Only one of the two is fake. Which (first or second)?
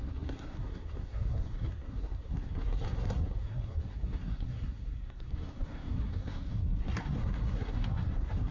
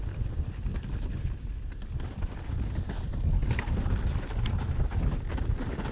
first